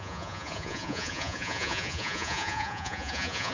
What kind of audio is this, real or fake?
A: fake